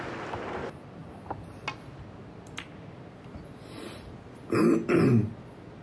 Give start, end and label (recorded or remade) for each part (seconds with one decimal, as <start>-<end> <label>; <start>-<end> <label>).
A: 0.0-5.8 recorded